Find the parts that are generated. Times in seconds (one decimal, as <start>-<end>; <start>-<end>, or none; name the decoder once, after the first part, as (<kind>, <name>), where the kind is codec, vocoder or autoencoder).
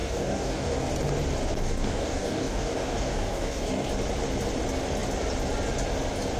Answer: 0.0-0.9 (codec, DAC); 1.6-3.9